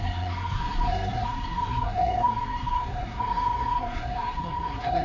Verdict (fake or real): fake